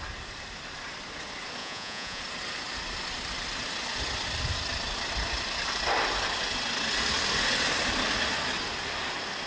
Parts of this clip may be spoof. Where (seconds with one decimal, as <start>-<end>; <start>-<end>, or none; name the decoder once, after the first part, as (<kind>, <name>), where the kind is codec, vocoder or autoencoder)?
1.6-2.2 (vocoder, Vocos)